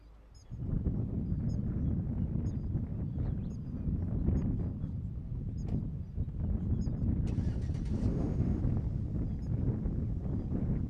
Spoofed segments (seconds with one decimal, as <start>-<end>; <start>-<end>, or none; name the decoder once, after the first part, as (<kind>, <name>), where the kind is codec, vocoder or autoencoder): 8.1-8.6 (autoencoder, DAC-VAE)